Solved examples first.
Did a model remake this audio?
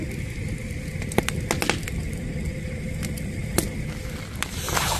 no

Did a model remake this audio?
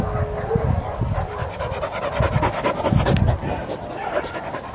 no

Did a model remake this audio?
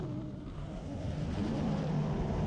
yes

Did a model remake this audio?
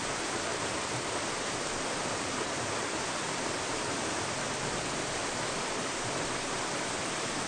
yes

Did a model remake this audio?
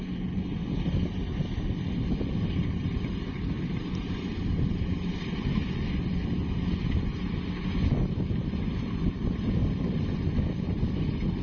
no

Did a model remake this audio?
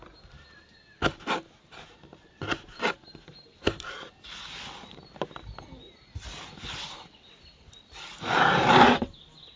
no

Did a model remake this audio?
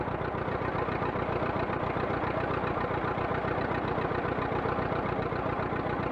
no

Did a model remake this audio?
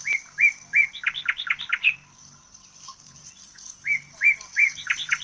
yes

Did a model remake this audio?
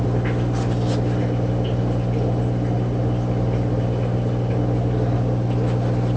no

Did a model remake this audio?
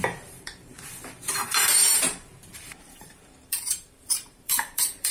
yes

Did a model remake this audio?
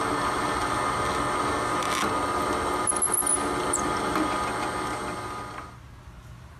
no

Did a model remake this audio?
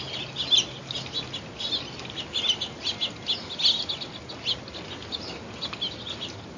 no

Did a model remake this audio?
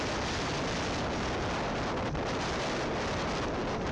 no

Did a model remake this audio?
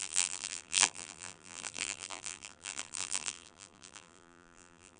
yes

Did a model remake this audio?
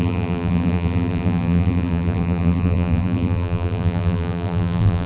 yes